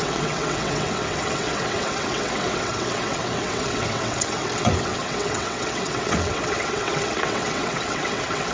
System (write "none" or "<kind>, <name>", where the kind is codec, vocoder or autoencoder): vocoder, WaveNeXt